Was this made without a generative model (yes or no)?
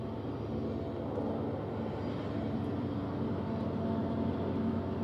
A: yes